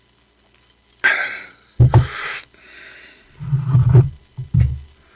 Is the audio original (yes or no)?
yes